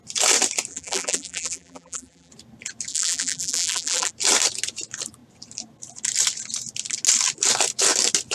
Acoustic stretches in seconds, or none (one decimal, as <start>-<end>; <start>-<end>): 0.0-0.7; 2.3-2.9; 4.1-8.3